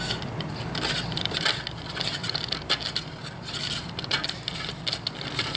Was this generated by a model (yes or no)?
no